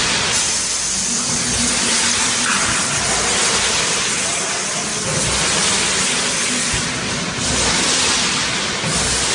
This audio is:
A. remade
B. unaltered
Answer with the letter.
B